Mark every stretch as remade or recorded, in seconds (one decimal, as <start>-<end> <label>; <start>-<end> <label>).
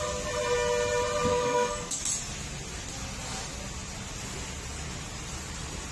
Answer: 0.0-1.3 recorded; 1.3-2.0 remade; 2.0-5.9 recorded